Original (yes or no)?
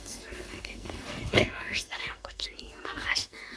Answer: no